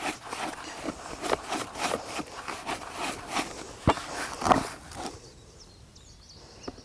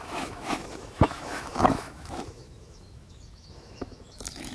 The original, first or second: first